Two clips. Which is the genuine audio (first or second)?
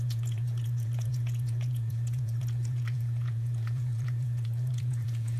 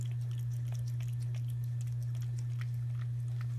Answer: second